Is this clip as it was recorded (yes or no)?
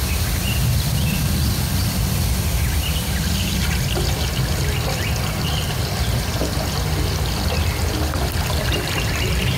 yes